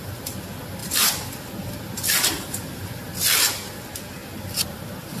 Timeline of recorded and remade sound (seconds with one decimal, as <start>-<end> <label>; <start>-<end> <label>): 0.0-0.8 recorded; 0.8-3.2 remade; 3.2-4.2 recorded; 4.2-5.2 remade